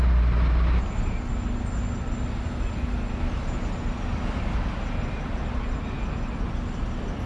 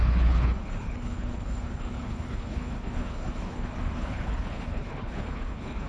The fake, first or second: second